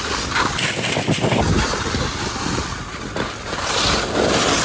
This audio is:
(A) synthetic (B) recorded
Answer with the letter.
B